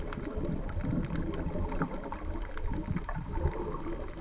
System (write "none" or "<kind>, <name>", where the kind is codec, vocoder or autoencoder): none